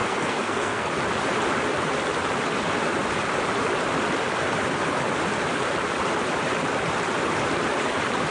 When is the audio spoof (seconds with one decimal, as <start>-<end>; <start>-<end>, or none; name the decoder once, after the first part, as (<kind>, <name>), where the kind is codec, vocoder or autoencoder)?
0.0-0.9 (codec, SNAC)